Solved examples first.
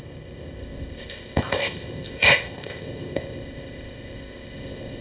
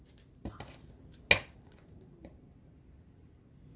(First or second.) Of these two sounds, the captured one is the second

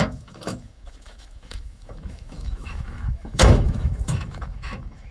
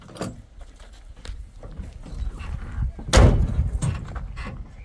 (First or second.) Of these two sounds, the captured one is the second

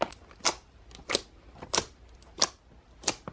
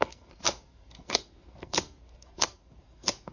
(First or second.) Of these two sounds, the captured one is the first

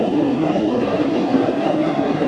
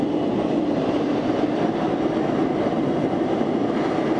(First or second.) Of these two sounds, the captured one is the second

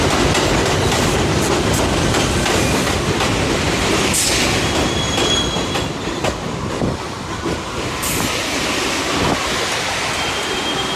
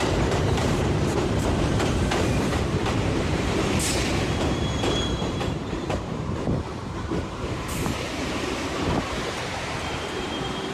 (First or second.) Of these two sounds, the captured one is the first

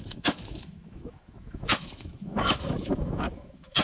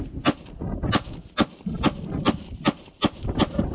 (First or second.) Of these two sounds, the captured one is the second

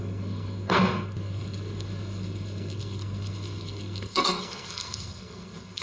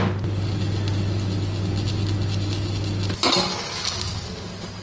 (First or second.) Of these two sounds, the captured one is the second